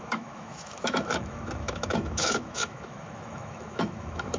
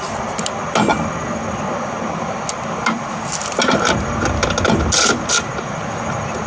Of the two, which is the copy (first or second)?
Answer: first